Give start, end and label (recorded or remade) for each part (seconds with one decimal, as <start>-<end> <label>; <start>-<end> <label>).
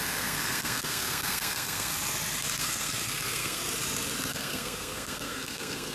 0.0-1.9 remade; 1.9-2.6 recorded; 2.6-3.6 remade; 3.6-4.3 recorded; 4.3-5.9 remade